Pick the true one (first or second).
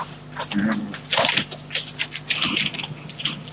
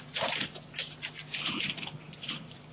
first